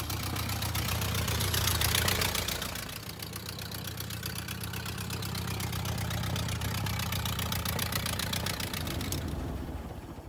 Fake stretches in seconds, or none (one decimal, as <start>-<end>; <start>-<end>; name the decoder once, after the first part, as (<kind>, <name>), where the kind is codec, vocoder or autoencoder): 0.0-1.7 (vocoder, BigVGAN v2); 6.8-10.3